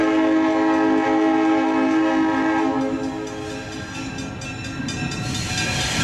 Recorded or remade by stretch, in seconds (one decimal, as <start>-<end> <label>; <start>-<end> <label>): 0.0-6.0 recorded